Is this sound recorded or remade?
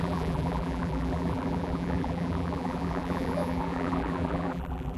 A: remade